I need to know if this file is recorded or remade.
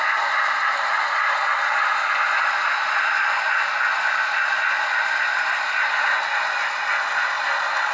recorded